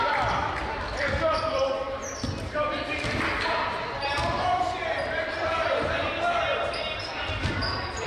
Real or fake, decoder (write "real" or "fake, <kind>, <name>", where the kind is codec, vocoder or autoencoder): fake, vocoder, BigVGAN v2